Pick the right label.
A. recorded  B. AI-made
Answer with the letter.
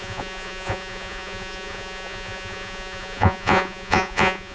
B